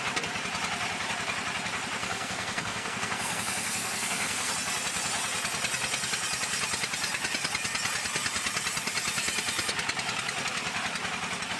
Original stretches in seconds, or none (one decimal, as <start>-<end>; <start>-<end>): 0.0-2.0; 4.5-11.6